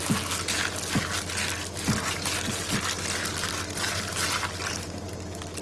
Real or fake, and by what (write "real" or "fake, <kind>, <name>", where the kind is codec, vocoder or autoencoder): real